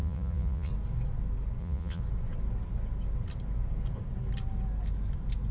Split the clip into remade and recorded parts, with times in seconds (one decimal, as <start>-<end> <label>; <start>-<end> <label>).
0.0-0.7 remade; 0.7-1.6 recorded; 1.6-2.0 remade; 2.0-5.5 recorded